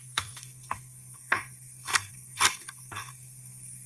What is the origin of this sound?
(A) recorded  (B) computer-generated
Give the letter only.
B